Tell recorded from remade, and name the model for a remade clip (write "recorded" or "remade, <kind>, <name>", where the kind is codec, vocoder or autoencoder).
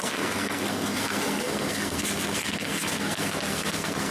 remade, codec, SNAC